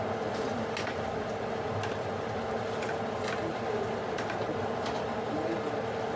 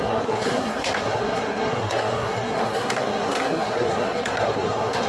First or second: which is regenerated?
second